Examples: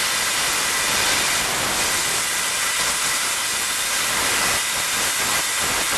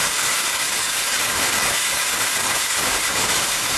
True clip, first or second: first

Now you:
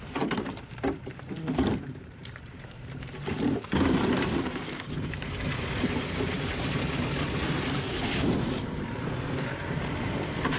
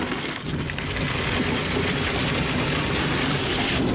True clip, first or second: second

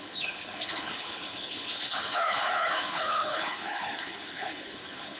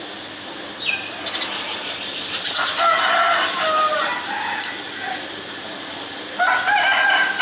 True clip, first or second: second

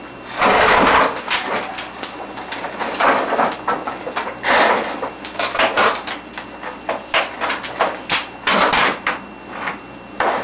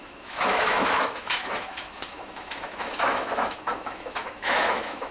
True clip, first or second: first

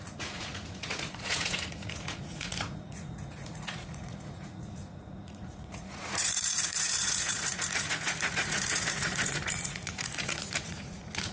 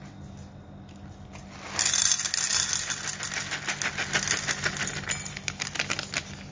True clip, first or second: second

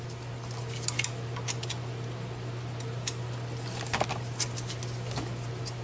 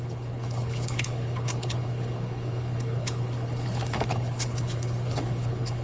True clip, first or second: first